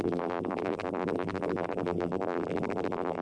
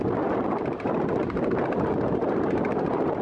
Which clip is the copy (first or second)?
first